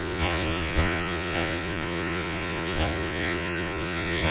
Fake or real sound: fake